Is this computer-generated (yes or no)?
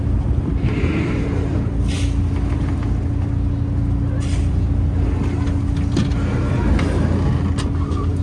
no